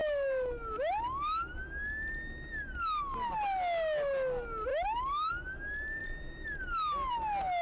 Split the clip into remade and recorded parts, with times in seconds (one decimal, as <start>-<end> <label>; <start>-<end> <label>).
0.0-0.9 remade; 0.9-4.7 recorded; 4.7-5.3 remade; 5.3-7.6 recorded